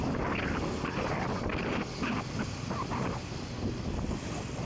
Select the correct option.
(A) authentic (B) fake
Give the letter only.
A